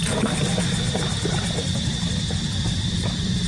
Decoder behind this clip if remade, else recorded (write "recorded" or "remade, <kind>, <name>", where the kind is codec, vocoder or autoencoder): recorded